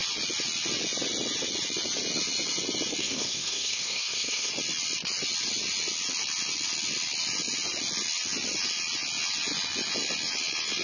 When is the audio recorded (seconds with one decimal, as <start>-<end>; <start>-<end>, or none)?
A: 0.0-3.0; 4.5-10.8